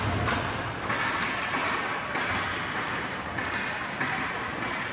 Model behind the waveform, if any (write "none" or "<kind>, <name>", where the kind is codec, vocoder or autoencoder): none